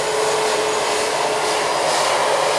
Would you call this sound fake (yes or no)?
no